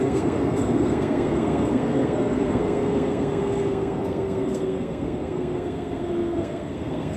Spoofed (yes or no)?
yes